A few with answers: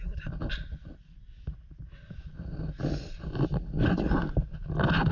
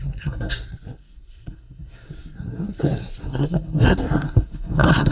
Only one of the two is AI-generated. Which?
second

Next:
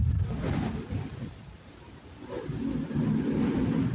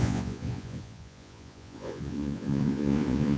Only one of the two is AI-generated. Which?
second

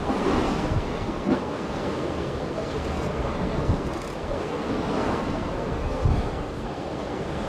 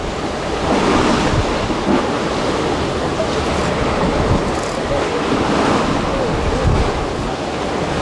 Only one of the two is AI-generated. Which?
first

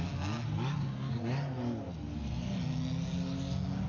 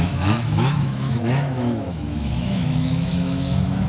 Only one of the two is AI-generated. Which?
second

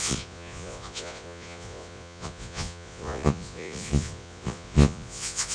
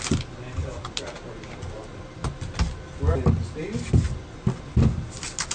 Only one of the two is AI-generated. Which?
first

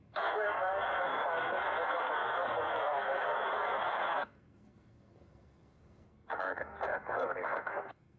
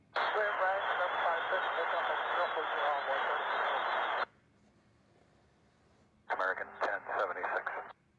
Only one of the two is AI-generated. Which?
first